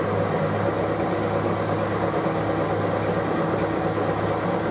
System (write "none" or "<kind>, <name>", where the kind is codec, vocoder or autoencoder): none